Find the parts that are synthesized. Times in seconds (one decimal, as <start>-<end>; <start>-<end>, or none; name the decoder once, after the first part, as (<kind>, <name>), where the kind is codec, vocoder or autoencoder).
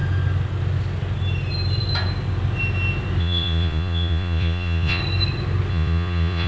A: 3.2-5.0 (vocoder, Vocos); 5.7-6.5